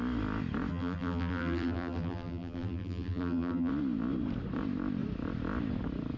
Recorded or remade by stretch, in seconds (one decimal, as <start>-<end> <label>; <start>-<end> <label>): 0.0-0.7 recorded; 0.7-3.7 remade; 3.7-6.2 recorded